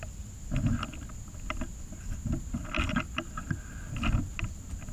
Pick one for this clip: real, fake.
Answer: real